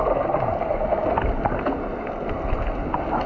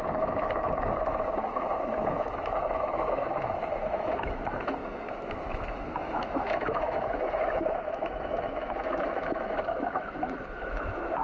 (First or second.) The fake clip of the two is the second